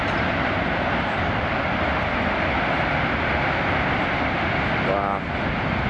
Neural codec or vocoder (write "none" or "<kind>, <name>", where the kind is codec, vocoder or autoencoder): none